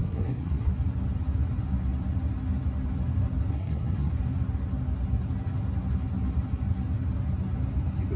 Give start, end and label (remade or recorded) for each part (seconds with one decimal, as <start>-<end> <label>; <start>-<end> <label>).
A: 0.0-0.7 remade; 0.7-3.5 recorded; 3.5-4.1 remade; 4.1-8.2 recorded